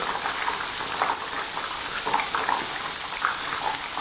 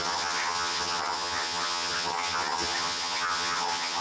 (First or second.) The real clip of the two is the first